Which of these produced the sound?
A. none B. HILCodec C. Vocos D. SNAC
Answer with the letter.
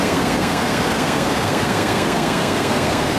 D